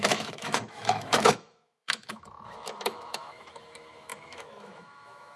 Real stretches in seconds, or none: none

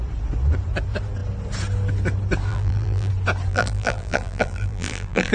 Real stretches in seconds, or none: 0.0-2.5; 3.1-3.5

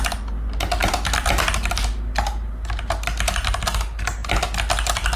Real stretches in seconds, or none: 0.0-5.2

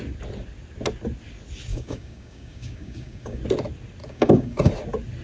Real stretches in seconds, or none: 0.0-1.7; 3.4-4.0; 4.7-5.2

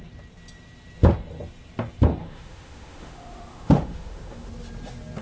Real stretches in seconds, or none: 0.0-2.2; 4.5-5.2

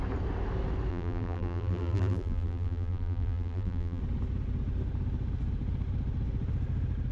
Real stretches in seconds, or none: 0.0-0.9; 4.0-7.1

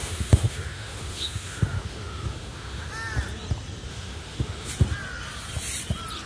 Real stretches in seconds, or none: 2.9-3.9; 4.7-6.3

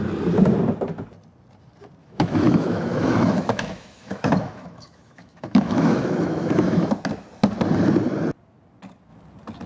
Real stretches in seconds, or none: 0.0-2.0; 6.9-9.7